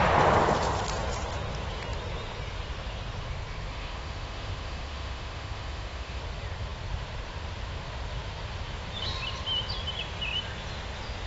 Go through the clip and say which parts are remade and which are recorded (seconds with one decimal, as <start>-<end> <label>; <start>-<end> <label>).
0.0-3.7 recorded; 3.7-6.2 remade; 6.2-11.3 recorded